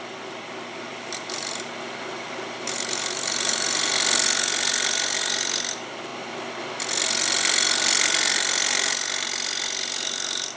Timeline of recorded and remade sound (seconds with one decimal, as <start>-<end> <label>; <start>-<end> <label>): 0.0-0.9 recorded; 0.9-3.9 remade; 3.9-10.6 recorded